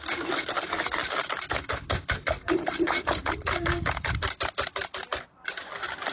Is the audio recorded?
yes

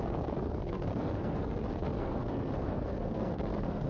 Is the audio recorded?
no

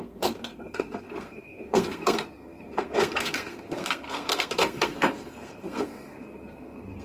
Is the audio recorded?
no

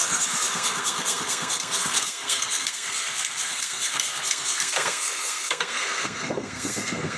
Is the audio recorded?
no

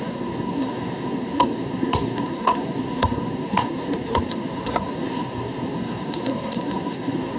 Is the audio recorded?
no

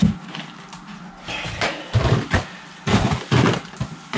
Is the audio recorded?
yes